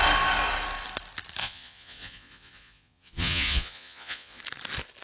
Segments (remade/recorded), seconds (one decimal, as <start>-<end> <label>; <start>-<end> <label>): 0.0-1.4 recorded; 1.4-4.4 remade; 4.4-5.0 recorded